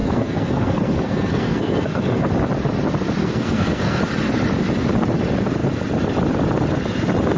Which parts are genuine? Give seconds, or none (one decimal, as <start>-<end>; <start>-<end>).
2.3-3.2; 4.0-7.4

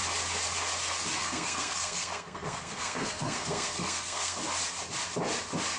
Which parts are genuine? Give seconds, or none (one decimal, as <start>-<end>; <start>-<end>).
0.0-1.2; 4.4-5.8

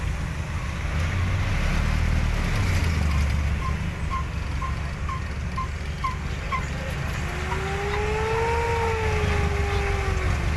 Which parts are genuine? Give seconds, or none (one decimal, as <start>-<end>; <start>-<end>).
0.0-10.6

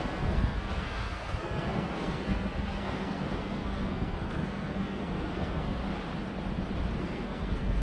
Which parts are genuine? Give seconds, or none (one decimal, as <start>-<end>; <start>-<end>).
5.8-7.0

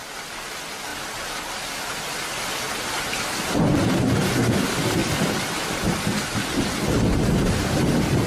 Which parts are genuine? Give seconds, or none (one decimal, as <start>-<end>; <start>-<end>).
0.0-8.3

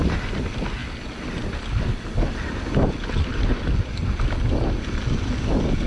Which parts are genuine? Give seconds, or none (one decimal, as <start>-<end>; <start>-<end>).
0.0-5.9